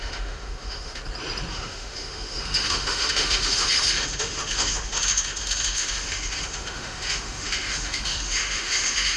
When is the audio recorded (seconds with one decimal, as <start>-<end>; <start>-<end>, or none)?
1.0-1.5